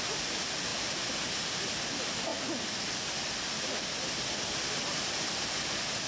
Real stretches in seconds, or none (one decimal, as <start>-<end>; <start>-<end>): 0.0-6.1

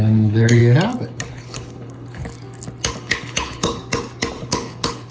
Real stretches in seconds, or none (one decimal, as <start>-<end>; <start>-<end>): 0.6-1.3; 2.2-2.9; 3.8-4.4